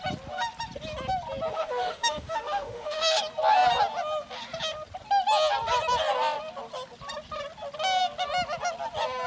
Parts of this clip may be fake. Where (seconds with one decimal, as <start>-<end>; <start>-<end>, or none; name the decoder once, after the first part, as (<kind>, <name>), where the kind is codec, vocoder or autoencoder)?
1.5-3.2 (autoencoder, DAC-VAE)